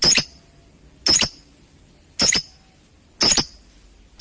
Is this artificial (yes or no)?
no